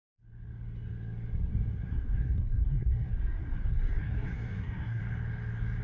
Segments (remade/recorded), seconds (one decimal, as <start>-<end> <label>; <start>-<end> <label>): 0.0-1.5 recorded; 1.5-5.0 remade; 5.0-5.8 recorded